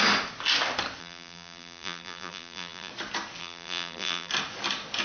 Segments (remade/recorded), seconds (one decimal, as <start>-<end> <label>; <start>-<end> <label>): 0.0-1.0 recorded; 1.0-2.9 remade; 2.9-3.4 recorded; 3.4-4.3 remade; 4.3-5.0 recorded

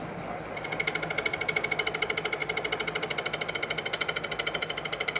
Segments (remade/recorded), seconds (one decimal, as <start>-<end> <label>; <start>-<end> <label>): 0.0-5.2 recorded

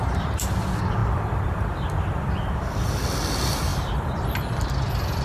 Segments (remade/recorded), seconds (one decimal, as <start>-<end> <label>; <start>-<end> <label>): 0.0-1.0 recorded; 1.0-2.9 remade; 2.9-3.7 recorded; 3.7-4.7 remade; 4.7-5.2 recorded

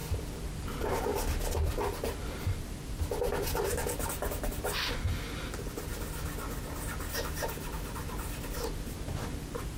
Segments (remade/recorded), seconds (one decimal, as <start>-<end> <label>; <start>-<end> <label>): 0.0-0.5 remade; 0.5-1.1 recorded; 1.1-3.3 remade; 3.3-9.8 recorded